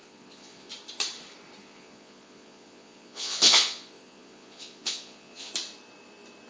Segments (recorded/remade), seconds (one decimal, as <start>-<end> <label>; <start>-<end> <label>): 0.0-0.7 remade; 0.7-1.6 recorded; 1.6-5.5 remade; 5.5-6.5 recorded